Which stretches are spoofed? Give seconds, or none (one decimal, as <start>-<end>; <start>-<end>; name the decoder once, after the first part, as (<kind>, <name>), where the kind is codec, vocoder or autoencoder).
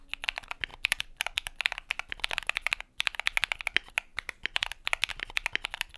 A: 0.7-2.8 (vocoder, BigVGAN v2); 4.1-5.1